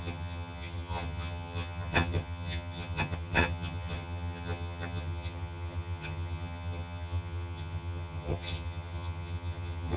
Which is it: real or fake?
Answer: fake